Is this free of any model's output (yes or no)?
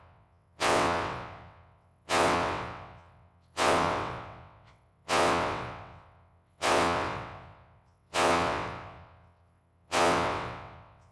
no